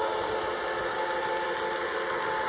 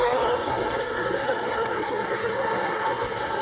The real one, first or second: first